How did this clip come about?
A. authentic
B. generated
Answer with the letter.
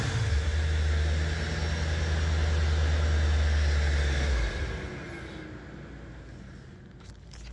A